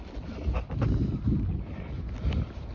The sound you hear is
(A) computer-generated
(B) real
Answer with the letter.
B